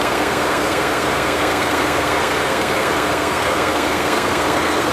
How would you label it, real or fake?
fake